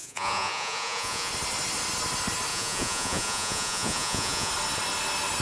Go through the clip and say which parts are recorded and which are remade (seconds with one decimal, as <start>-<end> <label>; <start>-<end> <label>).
0.0-1.3 remade; 1.3-2.5 recorded; 2.5-4.5 remade; 4.5-5.4 recorded